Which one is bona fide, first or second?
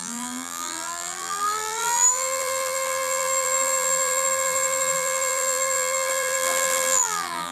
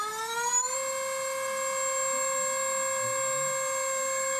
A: second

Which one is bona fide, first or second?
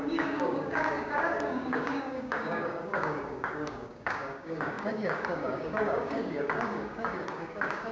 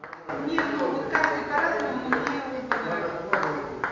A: second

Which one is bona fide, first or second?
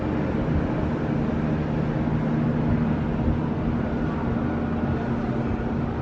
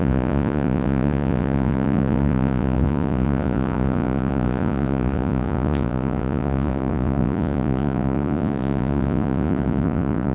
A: first